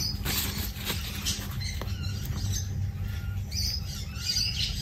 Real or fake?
real